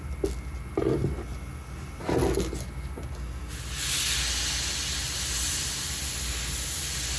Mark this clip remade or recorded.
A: recorded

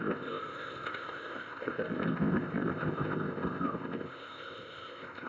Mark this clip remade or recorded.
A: remade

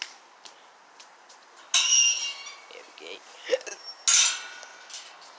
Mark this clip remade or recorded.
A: recorded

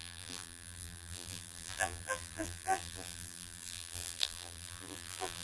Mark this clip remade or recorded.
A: remade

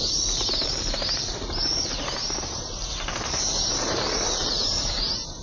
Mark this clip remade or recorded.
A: remade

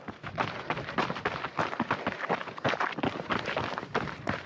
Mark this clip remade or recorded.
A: remade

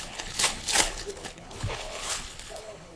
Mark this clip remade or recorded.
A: remade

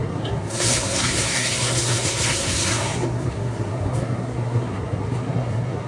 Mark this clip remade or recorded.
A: remade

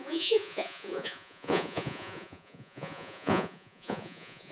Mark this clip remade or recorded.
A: remade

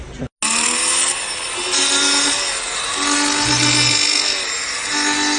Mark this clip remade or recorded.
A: recorded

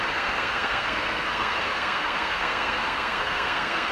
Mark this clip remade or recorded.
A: remade